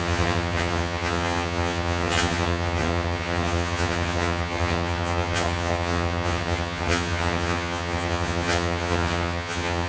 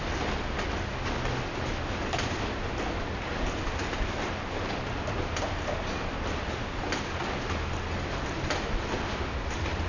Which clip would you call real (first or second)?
second